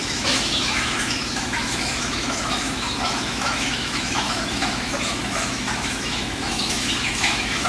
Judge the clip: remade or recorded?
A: remade